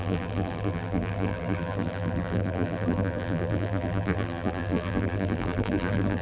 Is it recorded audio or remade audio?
remade